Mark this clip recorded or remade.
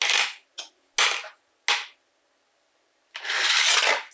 recorded